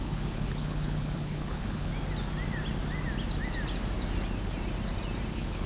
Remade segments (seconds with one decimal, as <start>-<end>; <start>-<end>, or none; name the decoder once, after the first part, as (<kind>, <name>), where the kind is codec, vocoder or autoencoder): 0.0-1.9 (codec, HILCodec); 5.3-5.7